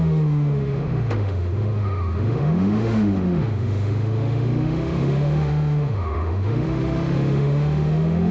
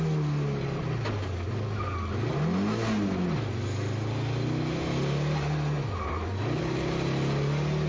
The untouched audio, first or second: second